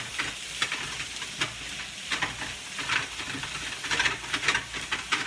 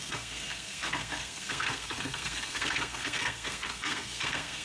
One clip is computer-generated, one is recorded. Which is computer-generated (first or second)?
second